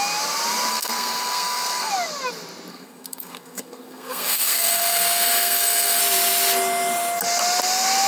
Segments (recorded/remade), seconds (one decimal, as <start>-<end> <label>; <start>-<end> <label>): 0.0-0.7 recorded; 0.7-1.9 remade; 1.9-2.7 recorded; 2.7-6.0 remade; 6.0-8.1 recorded